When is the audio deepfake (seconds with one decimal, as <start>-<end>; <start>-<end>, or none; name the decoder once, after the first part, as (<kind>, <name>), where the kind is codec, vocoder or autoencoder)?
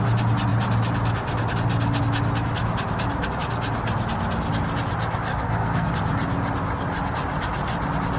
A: 5.3-5.9 (codec, SNAC)